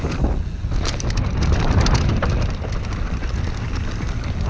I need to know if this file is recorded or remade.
recorded